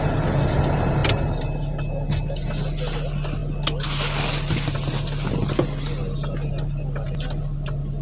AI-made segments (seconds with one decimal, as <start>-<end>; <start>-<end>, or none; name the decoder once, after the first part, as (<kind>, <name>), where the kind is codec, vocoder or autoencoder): none